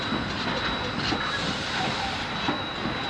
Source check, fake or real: real